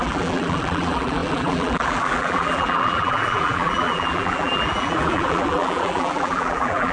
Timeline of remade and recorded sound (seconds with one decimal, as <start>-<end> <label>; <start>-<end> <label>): 0.0-6.9 remade